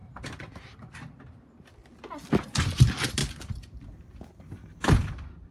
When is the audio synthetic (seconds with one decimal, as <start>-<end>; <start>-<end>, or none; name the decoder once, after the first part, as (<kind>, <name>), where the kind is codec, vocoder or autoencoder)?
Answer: 0.0-1.2 (vocoder, BigVGAN v2); 1.8-2.6; 3.2-4.4